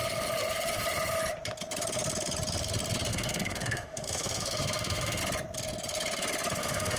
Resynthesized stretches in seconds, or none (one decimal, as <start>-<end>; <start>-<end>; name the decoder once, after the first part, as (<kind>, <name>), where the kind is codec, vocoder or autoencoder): 3.1-5.2 (autoencoder, DAC-VAE); 6.6-7.0